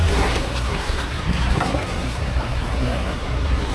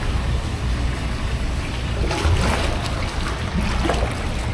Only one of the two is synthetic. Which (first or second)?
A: first